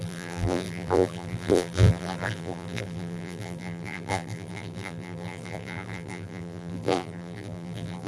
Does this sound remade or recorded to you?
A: remade